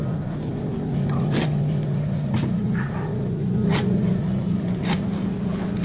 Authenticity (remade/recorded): recorded